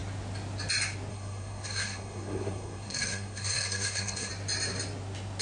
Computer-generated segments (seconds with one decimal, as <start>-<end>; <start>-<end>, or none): 1.1-4.3